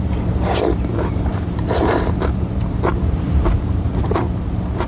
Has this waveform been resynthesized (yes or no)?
yes